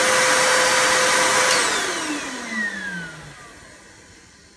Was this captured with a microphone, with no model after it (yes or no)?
yes